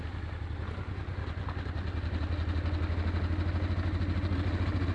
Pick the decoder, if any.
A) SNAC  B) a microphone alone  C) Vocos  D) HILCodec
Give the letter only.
B